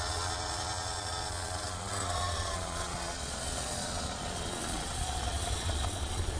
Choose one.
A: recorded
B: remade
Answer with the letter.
B